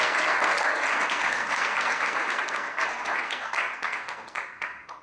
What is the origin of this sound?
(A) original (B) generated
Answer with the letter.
B